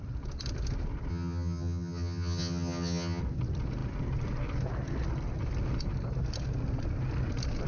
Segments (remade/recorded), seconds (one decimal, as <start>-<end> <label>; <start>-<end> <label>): 0.0-1.1 recorded; 1.1-3.2 remade; 3.2-7.7 recorded